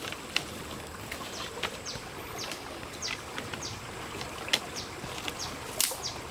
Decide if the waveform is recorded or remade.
recorded